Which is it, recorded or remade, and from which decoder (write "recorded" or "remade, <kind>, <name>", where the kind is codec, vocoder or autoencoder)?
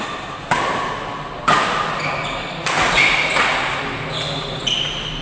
recorded